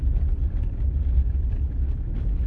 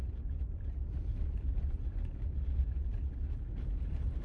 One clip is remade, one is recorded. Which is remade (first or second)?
second